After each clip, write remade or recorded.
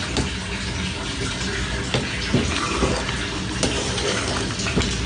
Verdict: recorded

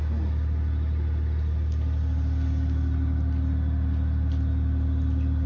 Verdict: recorded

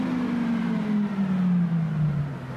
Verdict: recorded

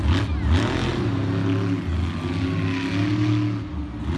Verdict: recorded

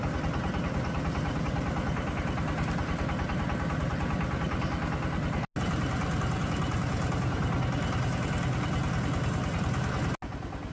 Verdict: recorded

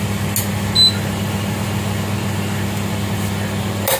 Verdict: recorded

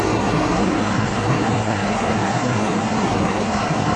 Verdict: remade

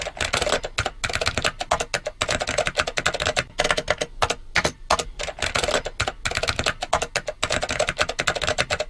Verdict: recorded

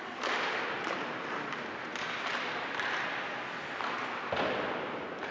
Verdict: recorded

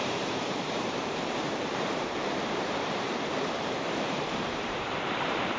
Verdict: remade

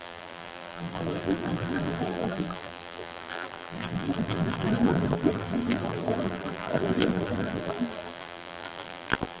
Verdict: remade